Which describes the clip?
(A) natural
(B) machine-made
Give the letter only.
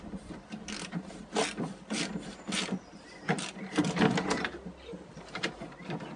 A